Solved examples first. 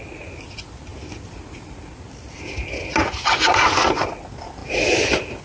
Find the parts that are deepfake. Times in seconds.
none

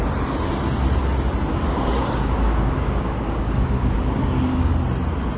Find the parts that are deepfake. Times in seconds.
1.5-4.7 (codec, DAC)